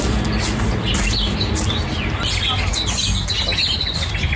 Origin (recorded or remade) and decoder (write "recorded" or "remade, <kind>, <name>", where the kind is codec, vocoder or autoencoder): recorded